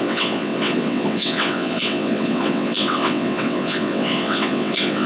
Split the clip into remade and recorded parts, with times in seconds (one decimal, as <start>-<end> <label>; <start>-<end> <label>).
0.0-5.1 remade